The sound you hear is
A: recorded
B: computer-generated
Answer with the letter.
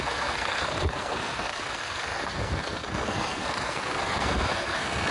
B